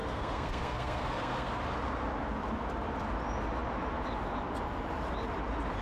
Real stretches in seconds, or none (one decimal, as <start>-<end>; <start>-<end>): 1.6-5.8